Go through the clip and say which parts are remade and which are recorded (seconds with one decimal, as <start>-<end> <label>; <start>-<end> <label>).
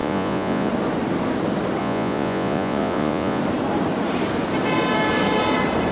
0.0-0.7 remade; 0.7-1.8 recorded; 1.8-3.4 remade; 3.4-5.9 recorded